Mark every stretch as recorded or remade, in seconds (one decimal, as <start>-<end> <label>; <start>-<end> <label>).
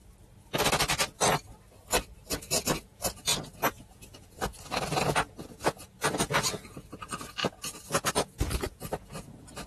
0.0-2.3 recorded; 2.3-4.5 remade; 4.5-5.0 recorded; 5.0-9.7 remade